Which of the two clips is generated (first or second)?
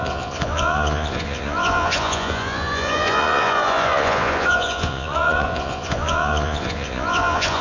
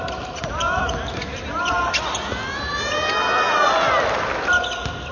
first